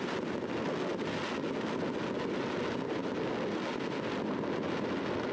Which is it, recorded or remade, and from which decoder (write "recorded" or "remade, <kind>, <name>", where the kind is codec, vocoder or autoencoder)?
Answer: recorded